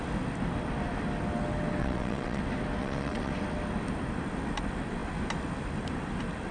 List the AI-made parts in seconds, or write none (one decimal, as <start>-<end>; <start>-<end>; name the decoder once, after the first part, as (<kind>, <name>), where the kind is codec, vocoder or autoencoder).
1.8-2.4 (vocoder, WaveNeXt); 2.8-3.3